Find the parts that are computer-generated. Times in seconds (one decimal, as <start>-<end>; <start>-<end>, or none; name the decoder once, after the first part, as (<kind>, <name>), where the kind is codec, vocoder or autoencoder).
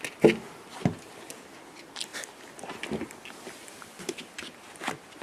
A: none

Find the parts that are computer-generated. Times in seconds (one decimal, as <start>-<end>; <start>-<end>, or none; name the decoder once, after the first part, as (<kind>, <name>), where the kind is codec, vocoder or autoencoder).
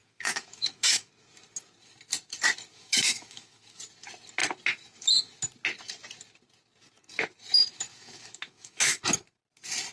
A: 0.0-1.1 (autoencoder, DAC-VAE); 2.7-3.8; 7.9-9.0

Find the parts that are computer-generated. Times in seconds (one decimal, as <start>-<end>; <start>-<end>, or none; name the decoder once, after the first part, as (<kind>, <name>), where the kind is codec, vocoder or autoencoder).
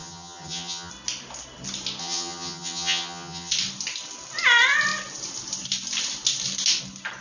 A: 0.0-0.9 (vocoder, HiFi-GAN); 2.0-3.5